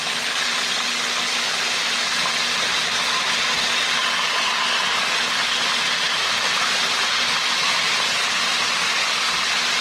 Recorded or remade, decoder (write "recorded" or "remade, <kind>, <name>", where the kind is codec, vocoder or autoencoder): recorded